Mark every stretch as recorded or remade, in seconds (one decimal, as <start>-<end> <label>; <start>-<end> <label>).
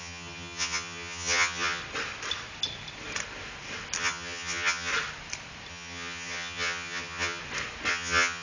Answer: 0.0-1.8 remade; 1.8-4.0 recorded; 4.0-4.9 remade; 4.9-5.7 recorded; 5.7-7.4 remade; 7.4-7.9 recorded; 7.9-8.4 remade